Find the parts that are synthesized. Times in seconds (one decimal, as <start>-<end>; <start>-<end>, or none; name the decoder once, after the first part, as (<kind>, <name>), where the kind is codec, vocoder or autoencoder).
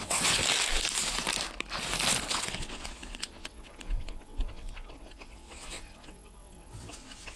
0.0-0.4 (vocoder, WaveNeXt); 2.3-7.4